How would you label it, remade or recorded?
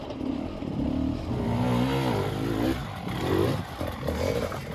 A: recorded